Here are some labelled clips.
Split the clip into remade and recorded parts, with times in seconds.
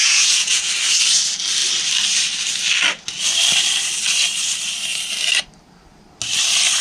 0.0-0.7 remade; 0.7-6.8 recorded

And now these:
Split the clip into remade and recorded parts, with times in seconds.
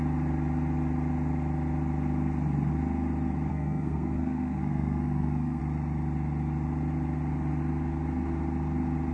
0.0-3.5 recorded; 3.5-5.6 remade; 5.6-9.1 recorded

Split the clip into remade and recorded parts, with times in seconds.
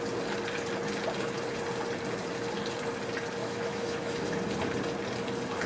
0.0-3.4 recorded; 3.4-4.3 remade; 4.3-5.7 recorded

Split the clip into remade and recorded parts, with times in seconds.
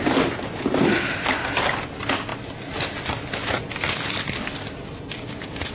0.0-5.7 recorded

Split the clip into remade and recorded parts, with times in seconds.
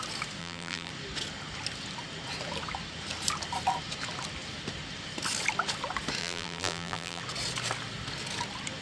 0.0-0.4 recorded; 0.4-0.9 remade; 0.9-6.2 recorded; 6.2-7.2 remade; 7.2-8.8 recorded